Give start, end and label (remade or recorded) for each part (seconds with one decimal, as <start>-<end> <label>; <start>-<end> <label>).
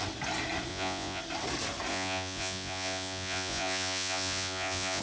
0.0-0.7 recorded; 0.7-1.2 remade; 1.2-1.9 recorded; 1.9-5.0 remade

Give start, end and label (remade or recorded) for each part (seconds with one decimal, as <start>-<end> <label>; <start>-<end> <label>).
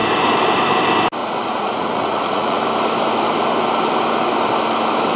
0.0-1.2 recorded; 1.2-2.6 remade; 2.6-5.2 recorded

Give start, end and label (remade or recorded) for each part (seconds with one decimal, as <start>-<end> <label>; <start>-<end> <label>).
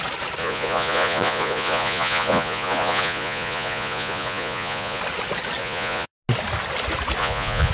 0.0-0.4 recorded; 0.4-5.0 remade; 5.0-5.6 recorded; 5.6-6.1 remade; 6.1-7.2 recorded; 7.2-7.7 remade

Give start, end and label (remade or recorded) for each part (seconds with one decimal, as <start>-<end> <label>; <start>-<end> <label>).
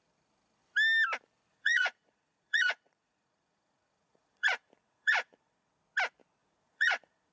0.0-1.5 recorded; 1.5-5.7 remade; 5.7-6.4 recorded; 6.4-7.3 remade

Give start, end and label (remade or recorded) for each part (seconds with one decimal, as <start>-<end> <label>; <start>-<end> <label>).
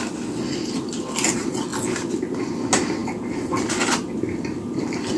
0.0-5.2 recorded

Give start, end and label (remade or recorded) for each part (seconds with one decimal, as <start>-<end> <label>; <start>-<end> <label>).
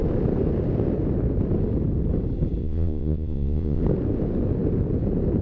0.0-2.6 recorded; 2.6-3.8 remade; 3.8-5.4 recorded